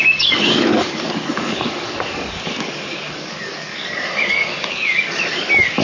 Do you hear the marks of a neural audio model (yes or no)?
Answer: yes